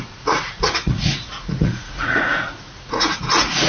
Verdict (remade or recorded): remade